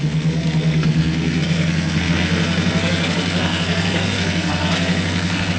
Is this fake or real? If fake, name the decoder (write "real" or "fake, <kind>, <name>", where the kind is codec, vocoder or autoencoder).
fake, codec, SNAC